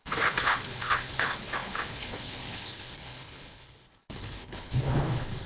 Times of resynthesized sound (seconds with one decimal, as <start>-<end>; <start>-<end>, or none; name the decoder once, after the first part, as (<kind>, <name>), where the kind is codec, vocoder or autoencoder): 0.0-5.5 (codec, HILCodec)